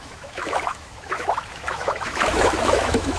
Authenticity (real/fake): fake